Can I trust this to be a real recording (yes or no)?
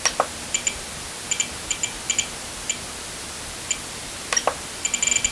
yes